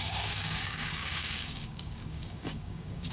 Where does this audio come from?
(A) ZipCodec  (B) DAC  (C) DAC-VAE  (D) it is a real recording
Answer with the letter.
B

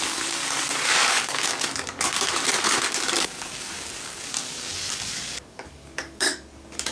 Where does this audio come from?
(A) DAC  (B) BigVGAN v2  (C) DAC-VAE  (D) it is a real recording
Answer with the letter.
A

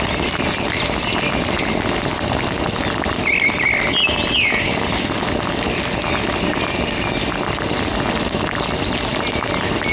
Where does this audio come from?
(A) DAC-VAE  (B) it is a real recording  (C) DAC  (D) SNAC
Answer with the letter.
B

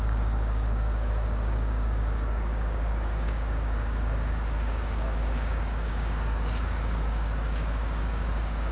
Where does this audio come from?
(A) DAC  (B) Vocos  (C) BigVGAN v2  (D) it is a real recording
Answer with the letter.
A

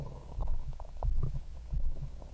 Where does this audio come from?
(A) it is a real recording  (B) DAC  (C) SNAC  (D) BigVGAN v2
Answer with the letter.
B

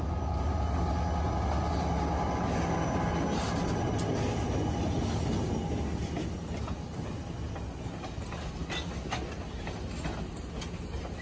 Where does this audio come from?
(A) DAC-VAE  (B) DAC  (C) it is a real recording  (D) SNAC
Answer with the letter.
C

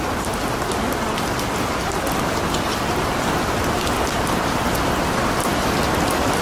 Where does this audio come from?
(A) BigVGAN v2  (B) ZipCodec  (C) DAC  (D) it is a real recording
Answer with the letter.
D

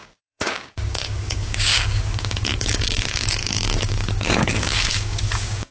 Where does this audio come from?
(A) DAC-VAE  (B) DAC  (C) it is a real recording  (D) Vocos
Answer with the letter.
B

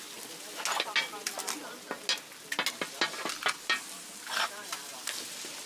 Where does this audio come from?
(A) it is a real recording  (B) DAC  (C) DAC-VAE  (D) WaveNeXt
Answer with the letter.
A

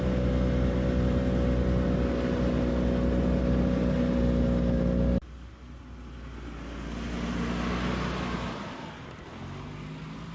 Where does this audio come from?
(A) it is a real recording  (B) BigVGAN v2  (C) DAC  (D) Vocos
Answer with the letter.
A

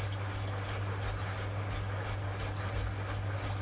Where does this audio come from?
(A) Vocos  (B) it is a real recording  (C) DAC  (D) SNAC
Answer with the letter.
B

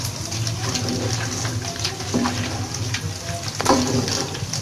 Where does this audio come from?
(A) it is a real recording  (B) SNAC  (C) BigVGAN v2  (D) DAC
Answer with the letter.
A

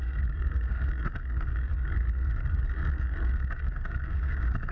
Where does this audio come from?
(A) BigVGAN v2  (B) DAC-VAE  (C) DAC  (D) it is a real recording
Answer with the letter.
C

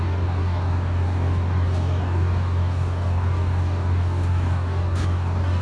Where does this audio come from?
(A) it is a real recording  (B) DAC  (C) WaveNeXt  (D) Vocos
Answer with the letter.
B